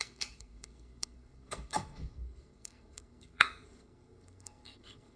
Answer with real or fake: fake